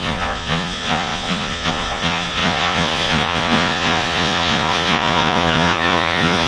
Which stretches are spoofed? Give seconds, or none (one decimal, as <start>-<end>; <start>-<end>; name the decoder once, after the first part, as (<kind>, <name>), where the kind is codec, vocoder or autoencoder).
0.0-6.5 (vocoder, Vocos)